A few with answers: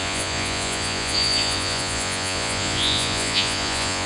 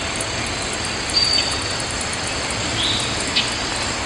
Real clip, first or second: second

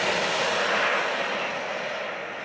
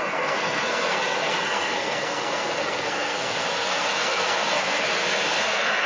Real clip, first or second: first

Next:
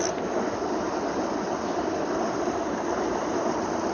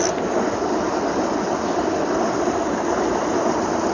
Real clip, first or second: second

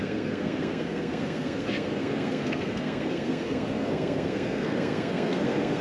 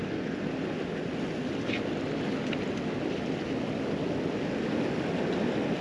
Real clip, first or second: second